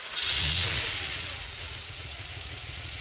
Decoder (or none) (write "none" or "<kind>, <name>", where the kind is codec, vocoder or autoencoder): vocoder, Vocos